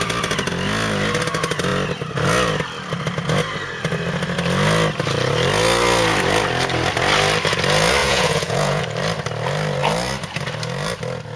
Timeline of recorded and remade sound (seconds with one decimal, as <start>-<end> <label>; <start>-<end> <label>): 0.0-8.0 recorded; 8.0-8.8 remade; 8.8-11.4 recorded

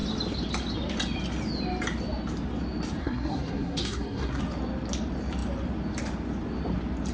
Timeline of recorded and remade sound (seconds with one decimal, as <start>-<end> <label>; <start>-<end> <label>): 0.0-3.0 recorded; 3.0-4.4 remade; 4.4-7.1 recorded

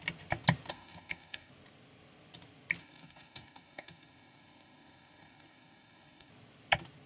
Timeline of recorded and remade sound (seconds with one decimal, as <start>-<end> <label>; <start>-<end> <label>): 0.0-0.7 recorded; 0.7-1.5 remade; 1.5-2.8 recorded; 2.8-6.3 remade; 6.3-7.1 recorded

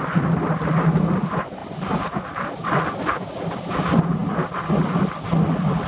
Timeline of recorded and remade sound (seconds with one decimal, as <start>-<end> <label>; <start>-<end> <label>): 0.0-1.6 recorded; 1.6-2.6 remade; 2.6-5.9 recorded

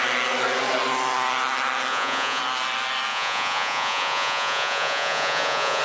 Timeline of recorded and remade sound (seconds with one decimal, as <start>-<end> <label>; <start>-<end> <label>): 0.0-1.9 recorded; 1.9-2.4 remade; 2.4-3.1 recorded; 3.1-5.8 remade